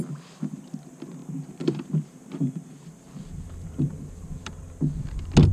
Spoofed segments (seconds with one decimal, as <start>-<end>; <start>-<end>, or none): 1.2-4.5

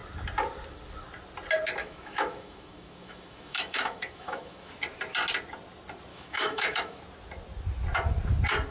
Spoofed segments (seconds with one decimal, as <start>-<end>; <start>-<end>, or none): 1.8-4.7; 6.1-7.0

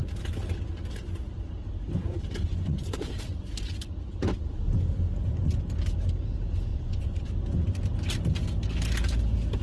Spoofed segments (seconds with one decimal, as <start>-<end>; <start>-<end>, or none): 2.5-3.1; 6.7-7.3

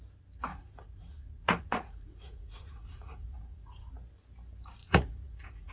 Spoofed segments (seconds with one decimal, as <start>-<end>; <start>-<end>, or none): 0.5-3.9; 4.8-5.7

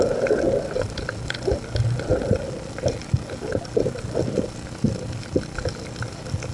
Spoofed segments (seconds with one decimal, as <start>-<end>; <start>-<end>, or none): none

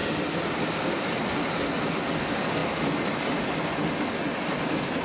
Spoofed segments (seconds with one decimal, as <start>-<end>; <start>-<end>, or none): none